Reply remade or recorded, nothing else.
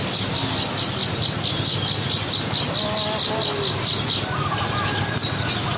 recorded